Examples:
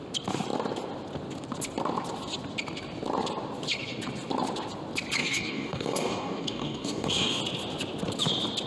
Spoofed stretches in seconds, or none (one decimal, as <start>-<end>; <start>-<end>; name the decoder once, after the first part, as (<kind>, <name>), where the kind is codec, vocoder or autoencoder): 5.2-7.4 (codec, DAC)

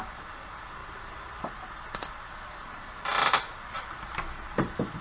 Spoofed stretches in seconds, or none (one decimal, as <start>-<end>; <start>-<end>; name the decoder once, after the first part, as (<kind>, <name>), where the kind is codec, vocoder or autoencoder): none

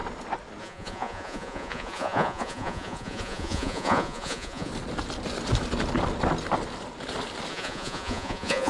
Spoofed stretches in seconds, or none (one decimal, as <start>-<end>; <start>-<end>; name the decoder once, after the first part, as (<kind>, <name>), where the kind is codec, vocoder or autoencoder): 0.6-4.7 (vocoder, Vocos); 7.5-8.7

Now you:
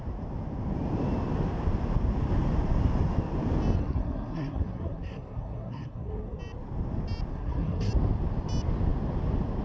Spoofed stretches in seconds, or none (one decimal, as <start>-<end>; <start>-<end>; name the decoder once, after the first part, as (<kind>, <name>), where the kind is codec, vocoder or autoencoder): 3.8-6.4 (codec, SNAC); 7.3-7.9